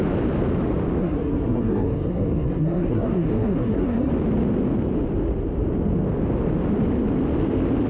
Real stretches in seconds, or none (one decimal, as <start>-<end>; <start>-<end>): 0.0-1.0; 4.1-7.9